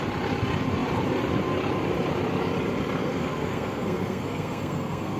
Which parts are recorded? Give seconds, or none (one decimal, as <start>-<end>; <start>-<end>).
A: 0.0-3.0